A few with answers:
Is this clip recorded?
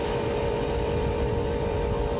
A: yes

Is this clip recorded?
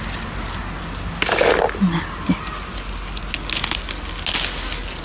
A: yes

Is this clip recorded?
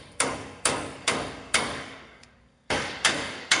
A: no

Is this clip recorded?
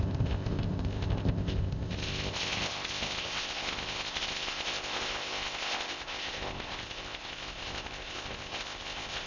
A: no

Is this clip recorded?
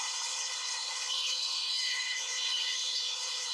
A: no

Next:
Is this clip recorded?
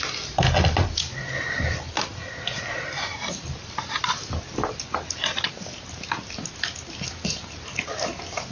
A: yes